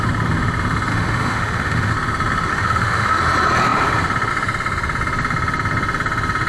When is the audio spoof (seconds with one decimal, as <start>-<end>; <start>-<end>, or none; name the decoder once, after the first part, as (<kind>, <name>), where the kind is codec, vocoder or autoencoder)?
0.9-1.9 (autoencoder, DAC-VAE); 2.5-3.2